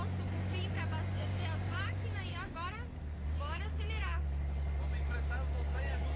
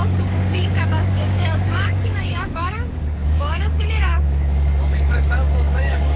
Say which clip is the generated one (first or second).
second